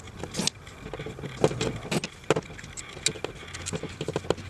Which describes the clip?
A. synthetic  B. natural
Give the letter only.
B